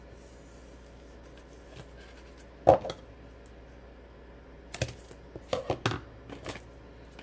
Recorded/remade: recorded